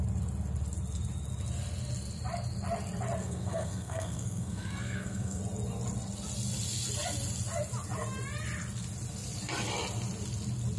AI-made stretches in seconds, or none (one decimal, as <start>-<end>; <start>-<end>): 3.2-5.4